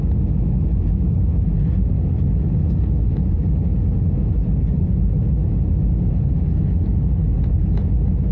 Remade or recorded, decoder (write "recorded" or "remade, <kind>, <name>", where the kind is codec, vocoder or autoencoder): recorded